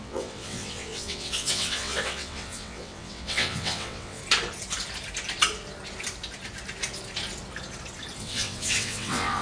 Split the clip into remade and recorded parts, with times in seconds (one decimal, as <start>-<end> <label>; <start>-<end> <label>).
0.0-4.2 remade; 4.2-8.2 recorded; 8.2-9.4 remade